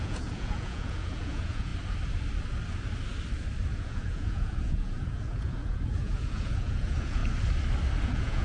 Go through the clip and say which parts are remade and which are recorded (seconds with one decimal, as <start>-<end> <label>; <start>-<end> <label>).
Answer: 0.0-1.7 remade; 1.7-3.8 recorded; 3.8-7.2 remade; 7.2-8.0 recorded; 8.0-8.4 remade